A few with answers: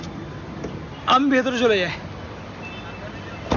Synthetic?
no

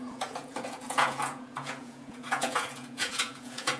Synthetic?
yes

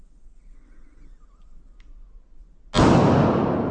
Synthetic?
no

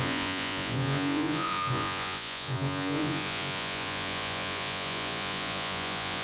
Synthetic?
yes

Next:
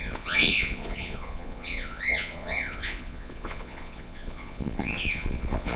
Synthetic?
yes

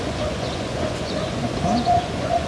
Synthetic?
yes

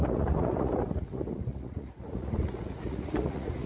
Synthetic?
yes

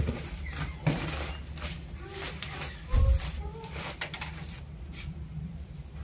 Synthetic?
no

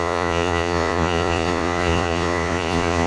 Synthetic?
yes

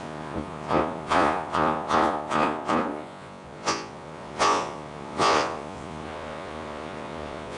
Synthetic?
yes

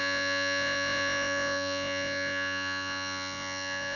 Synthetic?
yes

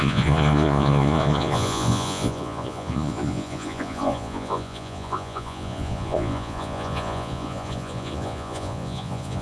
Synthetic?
yes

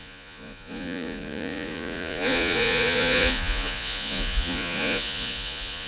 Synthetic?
yes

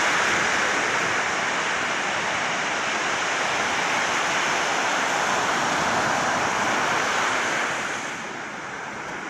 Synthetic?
no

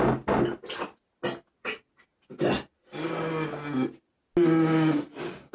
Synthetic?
no